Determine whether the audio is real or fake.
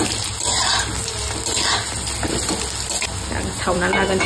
real